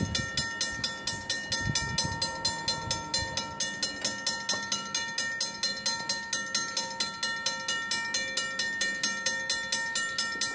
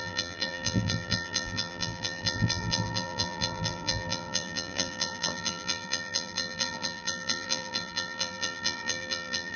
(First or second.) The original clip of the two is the first